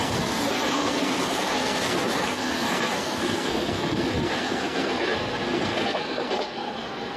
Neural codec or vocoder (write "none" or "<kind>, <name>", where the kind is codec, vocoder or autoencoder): codec, SNAC